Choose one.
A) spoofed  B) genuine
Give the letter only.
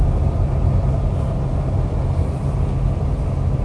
B